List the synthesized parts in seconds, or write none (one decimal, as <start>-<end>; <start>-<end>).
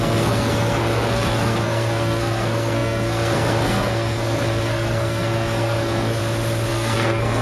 0.0-6.2; 6.7-7.4